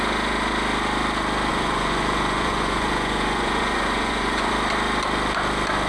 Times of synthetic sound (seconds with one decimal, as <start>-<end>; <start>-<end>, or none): 1.5-4.5